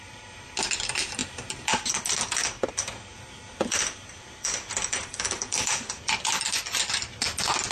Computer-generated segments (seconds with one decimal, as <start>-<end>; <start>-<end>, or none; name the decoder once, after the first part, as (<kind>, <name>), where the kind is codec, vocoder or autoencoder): 3.1-6.3 (vocoder, BigVGAN v2)